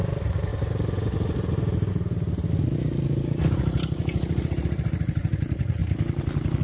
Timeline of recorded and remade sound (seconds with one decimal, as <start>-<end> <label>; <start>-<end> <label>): 0.0-6.6 recorded